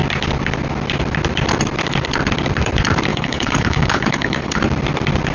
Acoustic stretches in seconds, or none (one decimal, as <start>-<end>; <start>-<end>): 0.0-3.1; 4.6-5.3